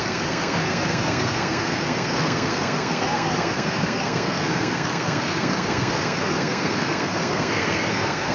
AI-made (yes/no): yes